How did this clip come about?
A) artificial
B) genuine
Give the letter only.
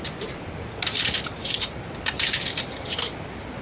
B